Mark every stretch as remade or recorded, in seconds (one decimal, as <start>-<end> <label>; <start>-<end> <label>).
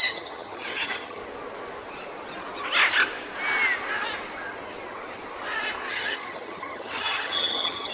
0.0-1.2 remade; 1.2-5.9 recorded; 5.9-7.9 remade